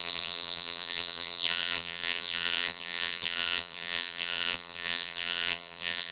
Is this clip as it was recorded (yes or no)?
no